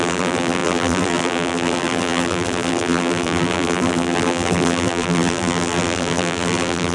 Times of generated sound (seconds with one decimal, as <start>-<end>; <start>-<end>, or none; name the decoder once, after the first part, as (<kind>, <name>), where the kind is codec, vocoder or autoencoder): 0.0-6.9 (vocoder, BigVGAN v2)